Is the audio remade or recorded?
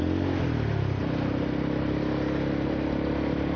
recorded